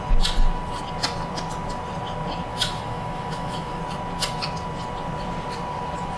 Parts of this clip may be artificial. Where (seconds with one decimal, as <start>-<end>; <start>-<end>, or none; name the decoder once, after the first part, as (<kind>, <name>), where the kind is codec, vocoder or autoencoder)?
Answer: 2.5-3.8 (autoencoder, DAC-VAE)